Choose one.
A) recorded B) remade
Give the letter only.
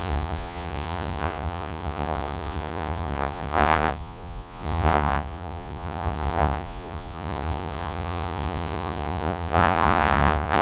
B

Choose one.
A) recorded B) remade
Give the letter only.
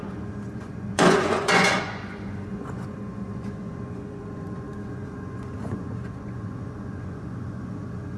B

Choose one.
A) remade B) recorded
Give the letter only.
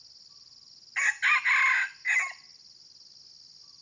B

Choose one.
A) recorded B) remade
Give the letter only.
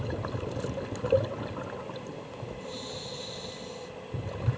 A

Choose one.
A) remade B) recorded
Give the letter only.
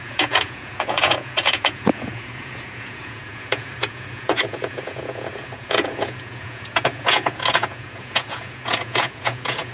A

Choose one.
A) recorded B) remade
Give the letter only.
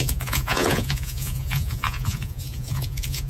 B